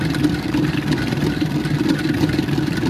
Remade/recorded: recorded